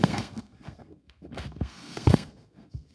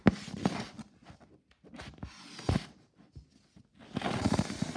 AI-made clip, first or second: first